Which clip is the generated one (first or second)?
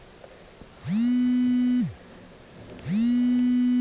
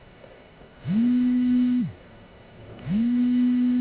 second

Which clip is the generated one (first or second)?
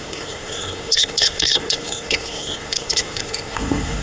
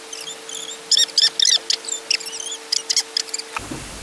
first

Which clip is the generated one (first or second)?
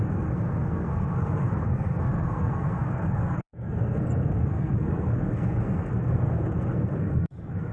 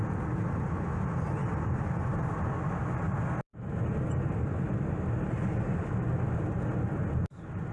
first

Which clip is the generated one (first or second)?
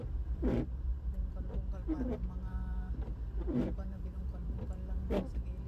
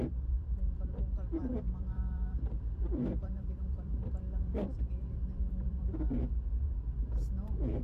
second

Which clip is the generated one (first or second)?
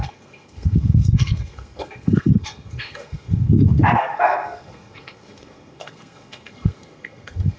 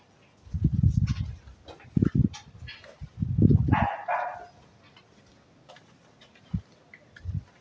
first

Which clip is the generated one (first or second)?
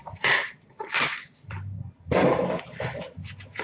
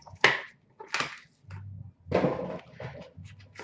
first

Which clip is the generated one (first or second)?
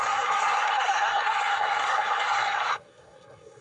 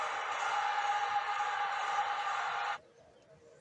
first